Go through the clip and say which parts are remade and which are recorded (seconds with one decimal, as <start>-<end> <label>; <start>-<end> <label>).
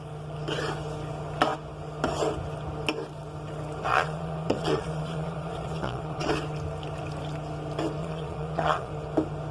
0.0-3.9 recorded; 3.9-6.3 remade; 6.3-8.0 recorded; 8.0-8.9 remade; 8.9-9.5 recorded